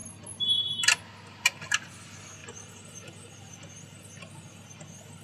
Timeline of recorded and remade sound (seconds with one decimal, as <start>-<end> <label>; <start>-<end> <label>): 0.0-2.4 recorded; 2.4-3.5 remade; 3.5-5.2 recorded